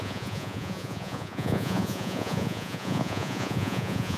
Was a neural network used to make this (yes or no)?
yes